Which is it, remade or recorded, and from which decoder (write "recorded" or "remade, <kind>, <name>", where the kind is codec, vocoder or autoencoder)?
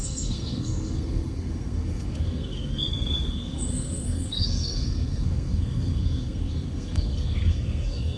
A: remade, codec, SNAC